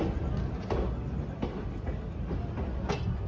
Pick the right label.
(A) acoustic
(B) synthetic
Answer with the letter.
A